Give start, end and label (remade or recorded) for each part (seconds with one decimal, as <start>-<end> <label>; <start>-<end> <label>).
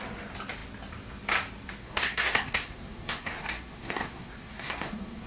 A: 0.0-1.8 recorded; 1.8-5.3 remade